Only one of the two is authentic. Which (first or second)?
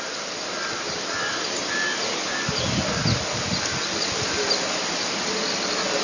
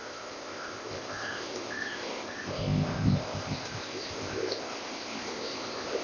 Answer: first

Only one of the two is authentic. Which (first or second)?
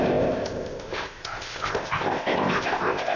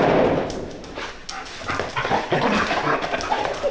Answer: second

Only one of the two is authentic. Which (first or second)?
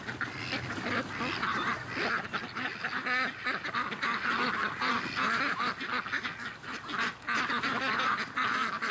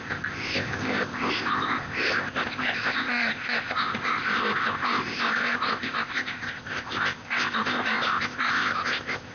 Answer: first